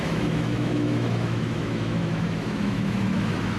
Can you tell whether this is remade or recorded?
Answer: remade